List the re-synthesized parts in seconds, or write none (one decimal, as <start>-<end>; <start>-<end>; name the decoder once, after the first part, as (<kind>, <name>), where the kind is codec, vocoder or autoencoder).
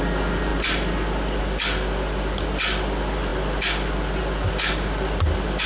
none